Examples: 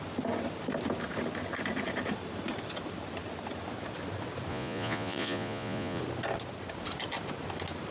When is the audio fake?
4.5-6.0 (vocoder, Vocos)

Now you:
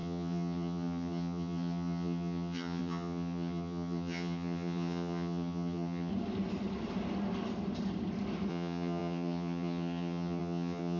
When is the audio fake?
0.0-6.1 (vocoder, HiFi-GAN); 8.5-11.0

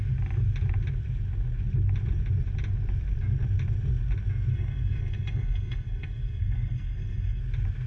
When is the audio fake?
4.5-7.4 (codec, SNAC)

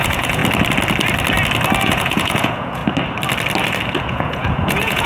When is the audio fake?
0.0-0.4 (vocoder, Vocos); 1.8-2.8; 4.0-5.1

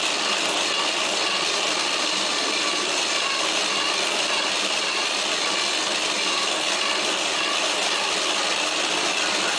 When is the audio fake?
none

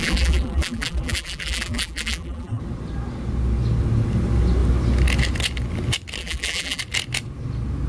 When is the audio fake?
0.0-2.6 (vocoder, BigVGAN v2); 6.2-6.8